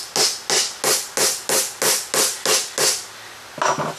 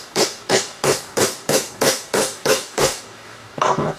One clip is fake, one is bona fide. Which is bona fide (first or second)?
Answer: first